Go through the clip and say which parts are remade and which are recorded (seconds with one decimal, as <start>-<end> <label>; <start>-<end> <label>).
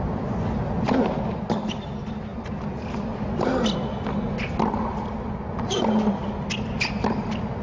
0.0-7.6 recorded